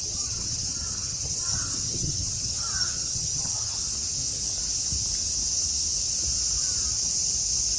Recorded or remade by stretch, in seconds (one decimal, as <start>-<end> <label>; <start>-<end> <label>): 0.0-3.8 remade; 3.8-7.8 recorded